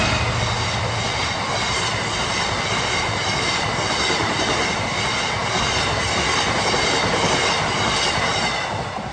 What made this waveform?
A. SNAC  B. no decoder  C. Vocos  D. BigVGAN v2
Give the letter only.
B